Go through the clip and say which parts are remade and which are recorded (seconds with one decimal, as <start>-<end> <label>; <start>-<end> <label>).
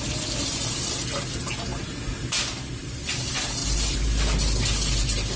0.0-5.4 recorded